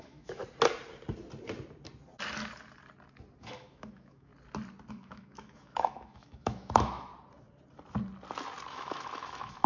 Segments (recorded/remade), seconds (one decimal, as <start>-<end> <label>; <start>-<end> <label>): 0.0-0.4 remade; 0.4-3.4 recorded; 3.4-4.3 remade; 4.3-4.9 recorded; 4.9-7.1 remade; 7.1-8.7 recorded; 8.7-9.7 remade